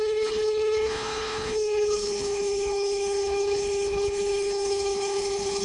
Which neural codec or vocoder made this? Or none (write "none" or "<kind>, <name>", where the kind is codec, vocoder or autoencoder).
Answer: codec, HILCodec